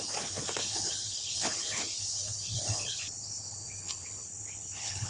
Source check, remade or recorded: remade